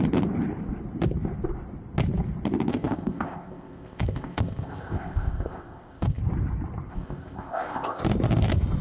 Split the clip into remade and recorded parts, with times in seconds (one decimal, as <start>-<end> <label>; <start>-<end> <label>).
0.0-2.7 recorded; 2.7-6.2 remade; 6.2-6.9 recorded; 6.9-8.0 remade; 8.0-8.8 recorded